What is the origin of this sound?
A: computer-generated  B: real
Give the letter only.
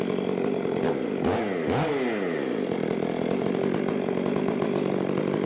B